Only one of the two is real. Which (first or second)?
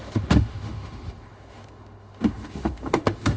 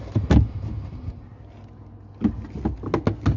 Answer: second